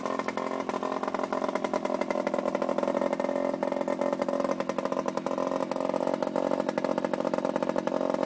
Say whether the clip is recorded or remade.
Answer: recorded